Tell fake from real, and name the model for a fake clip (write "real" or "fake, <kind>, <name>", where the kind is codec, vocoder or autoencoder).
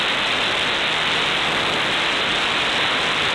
real